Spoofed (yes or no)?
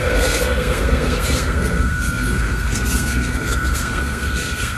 yes